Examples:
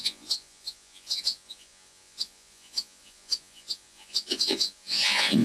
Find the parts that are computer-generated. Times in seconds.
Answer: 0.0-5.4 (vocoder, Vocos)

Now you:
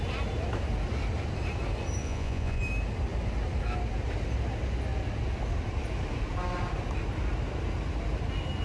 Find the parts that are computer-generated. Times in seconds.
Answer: 2.0-2.6 (vocoder, Vocos)

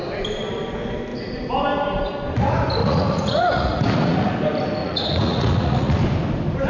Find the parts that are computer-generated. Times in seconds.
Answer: 2.8-4.3 (vocoder, Vocos); 4.8-6.0

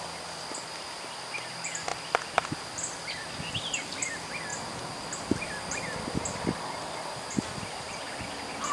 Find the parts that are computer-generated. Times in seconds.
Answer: none

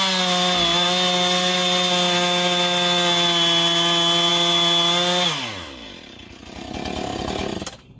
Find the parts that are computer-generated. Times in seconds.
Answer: none

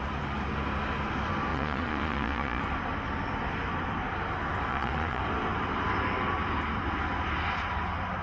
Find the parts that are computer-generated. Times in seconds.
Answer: 1.5-2.6 (vocoder, Vocos); 4.7-5.2